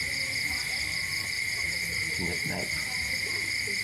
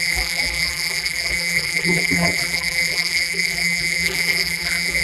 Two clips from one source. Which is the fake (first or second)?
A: second